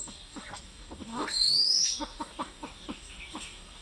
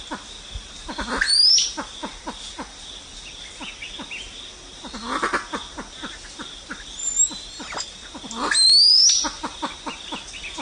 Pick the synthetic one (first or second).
first